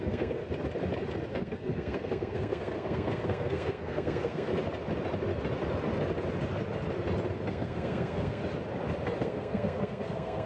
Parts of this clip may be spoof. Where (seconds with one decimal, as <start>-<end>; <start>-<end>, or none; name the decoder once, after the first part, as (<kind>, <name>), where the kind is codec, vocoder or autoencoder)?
0.0-0.4 (codec, SNAC); 1.3-4.5; 7.5-8.4; 9.2-10.5